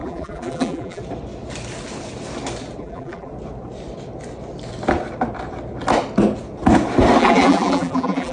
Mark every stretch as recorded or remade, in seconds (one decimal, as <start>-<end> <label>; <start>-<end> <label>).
0.0-1.0 remade; 1.0-2.8 recorded; 2.8-3.3 remade; 3.3-7.2 recorded; 7.2-8.3 remade